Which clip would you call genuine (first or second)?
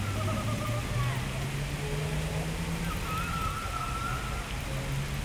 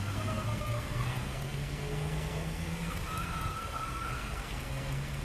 first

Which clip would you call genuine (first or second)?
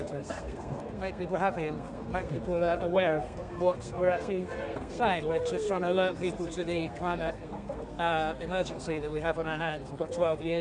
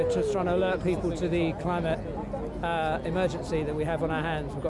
second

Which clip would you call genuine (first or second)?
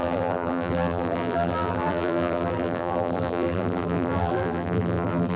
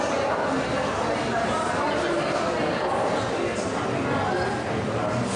second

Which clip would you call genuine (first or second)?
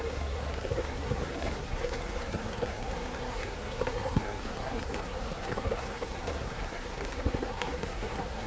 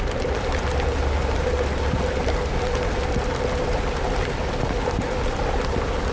second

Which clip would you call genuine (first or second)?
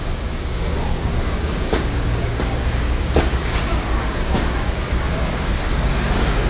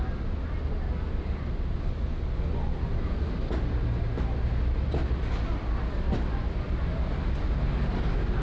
second